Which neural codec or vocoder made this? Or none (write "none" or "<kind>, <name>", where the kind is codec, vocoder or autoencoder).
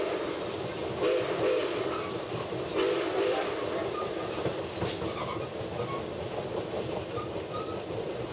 vocoder, BigVGAN v2